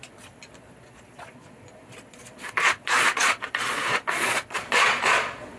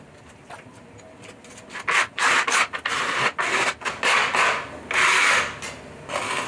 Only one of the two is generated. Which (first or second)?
first